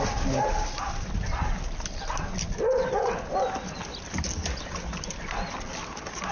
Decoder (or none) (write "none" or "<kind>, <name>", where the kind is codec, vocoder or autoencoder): none